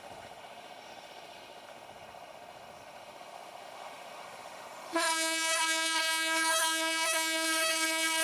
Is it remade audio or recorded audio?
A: remade